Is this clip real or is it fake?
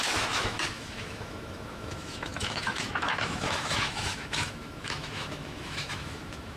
fake